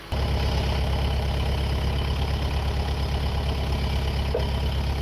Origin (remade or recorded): recorded